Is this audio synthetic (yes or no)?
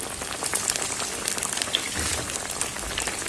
no